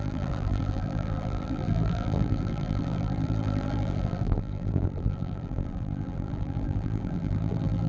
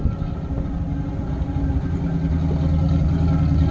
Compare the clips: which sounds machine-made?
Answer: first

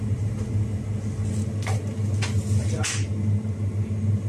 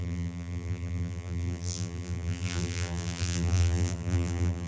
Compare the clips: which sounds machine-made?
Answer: second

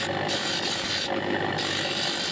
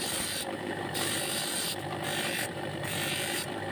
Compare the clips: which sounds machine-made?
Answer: second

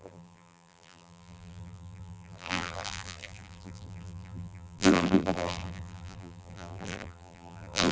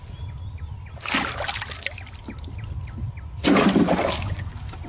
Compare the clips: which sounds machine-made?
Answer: first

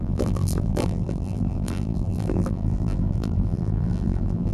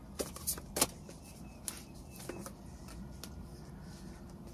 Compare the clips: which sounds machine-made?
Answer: first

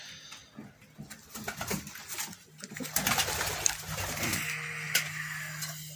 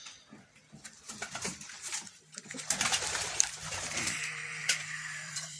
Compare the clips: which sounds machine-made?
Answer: second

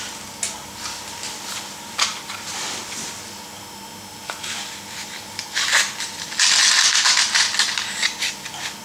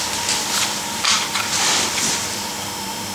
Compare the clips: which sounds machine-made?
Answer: second